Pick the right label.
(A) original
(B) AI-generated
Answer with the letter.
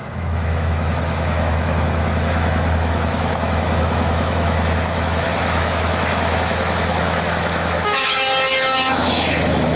B